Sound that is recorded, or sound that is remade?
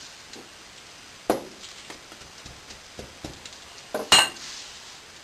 recorded